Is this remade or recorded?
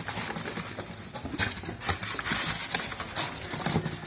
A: recorded